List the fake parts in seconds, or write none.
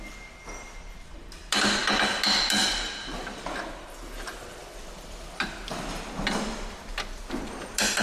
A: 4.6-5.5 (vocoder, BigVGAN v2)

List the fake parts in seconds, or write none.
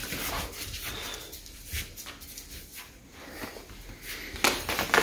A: 0.0-3.0 (vocoder, BigVGAN v2)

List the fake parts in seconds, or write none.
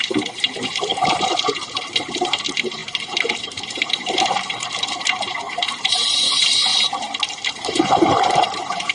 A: 0.0-6.7 (vocoder, BigVGAN v2); 7.5-8.9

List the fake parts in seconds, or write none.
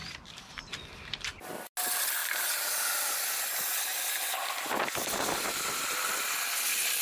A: 0.0-0.6 (vocoder, BigVGAN v2); 2.2-2.8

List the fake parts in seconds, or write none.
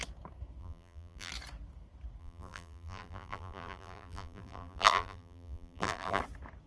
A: 0.6-1.3 (vocoder, BigVGAN v2); 2.2-6.2